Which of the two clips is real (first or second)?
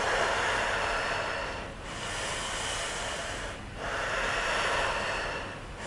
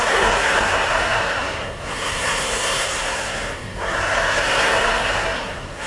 first